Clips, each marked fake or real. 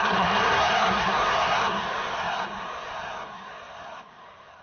fake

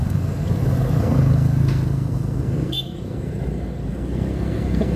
fake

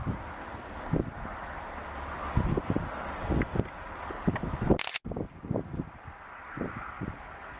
real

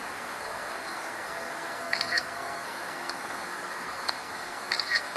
fake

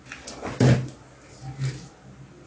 real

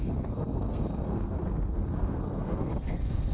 fake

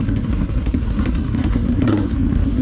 fake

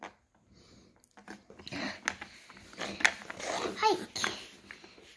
real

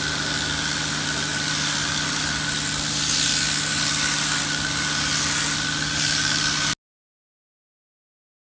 real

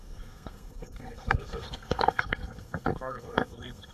fake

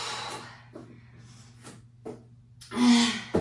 real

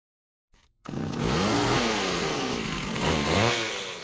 fake